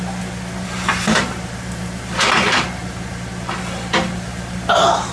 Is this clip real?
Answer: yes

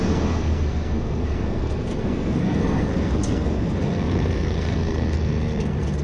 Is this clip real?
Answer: no